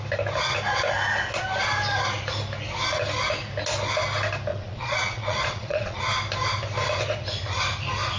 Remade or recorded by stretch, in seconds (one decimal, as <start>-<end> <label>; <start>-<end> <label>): 0.0-4.5 recorded; 4.5-6.0 remade; 6.0-8.2 recorded